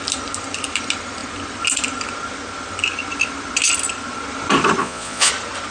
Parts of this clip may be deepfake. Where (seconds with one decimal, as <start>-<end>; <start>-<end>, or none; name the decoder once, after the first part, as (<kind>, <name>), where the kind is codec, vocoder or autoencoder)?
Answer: 4.8-5.3 (vocoder, Vocos)